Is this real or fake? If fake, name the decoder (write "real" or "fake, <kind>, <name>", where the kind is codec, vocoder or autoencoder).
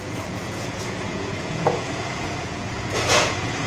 fake, vocoder, Vocos